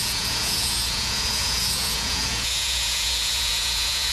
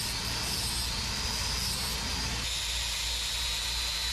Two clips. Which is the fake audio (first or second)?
first